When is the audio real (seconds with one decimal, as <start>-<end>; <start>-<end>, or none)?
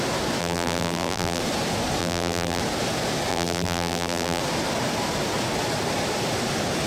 0.0-0.4; 1.4-2.0; 2.6-3.3; 4.4-6.9